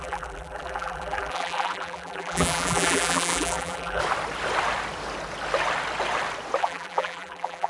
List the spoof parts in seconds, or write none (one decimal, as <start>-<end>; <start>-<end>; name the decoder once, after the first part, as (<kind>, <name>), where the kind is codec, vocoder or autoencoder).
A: 0.0-4.0 (vocoder, BigVGAN v2); 6.6-7.7